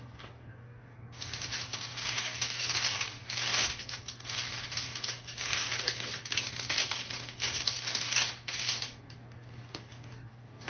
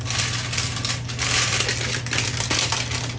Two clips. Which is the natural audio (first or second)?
second